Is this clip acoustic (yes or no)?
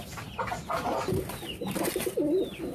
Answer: yes